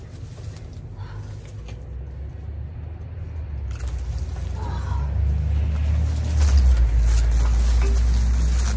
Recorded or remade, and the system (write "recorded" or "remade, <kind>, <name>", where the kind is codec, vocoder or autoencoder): recorded